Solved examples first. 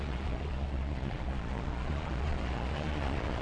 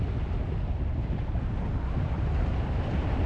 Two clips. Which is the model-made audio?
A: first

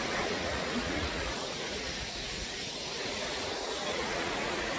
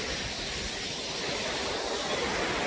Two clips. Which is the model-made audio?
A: first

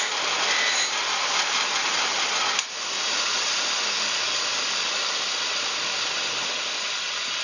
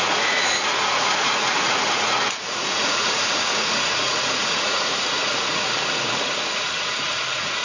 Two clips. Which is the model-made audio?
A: second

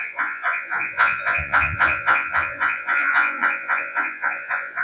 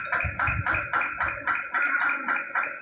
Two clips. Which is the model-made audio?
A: first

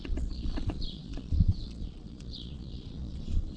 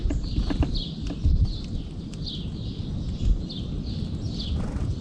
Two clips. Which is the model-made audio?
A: first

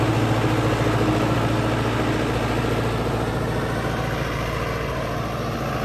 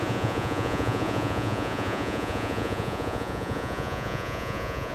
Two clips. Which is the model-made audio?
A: second